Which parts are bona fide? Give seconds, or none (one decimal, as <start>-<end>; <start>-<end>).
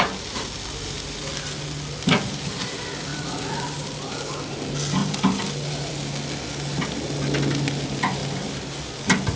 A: 0.0-3.1; 4.4-5.0; 5.9-9.4